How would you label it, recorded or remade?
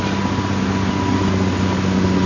recorded